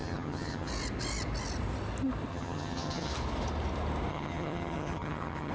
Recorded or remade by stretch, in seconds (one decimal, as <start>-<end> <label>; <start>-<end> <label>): 0.0-0.7 remade; 0.7-2.3 recorded; 2.3-3.1 remade; 3.1-4.1 recorded; 4.1-5.5 remade